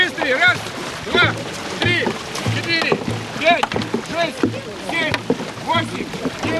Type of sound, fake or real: real